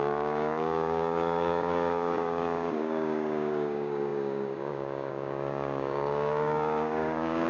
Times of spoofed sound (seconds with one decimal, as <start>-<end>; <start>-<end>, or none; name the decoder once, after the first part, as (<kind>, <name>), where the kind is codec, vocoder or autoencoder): 0.0-7.5 (codec, DAC)